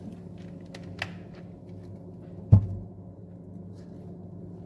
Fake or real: real